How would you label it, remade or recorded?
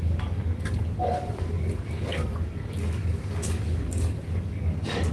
remade